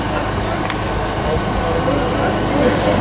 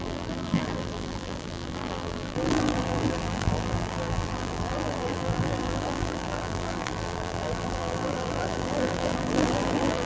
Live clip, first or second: first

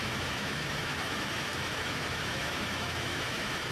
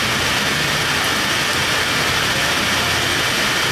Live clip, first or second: second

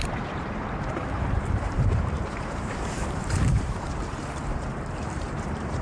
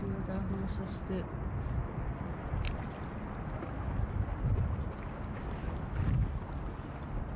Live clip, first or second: second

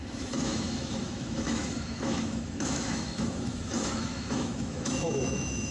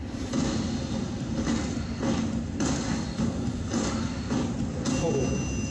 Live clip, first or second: second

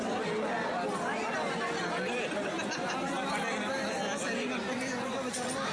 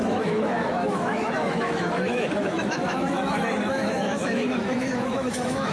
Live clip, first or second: first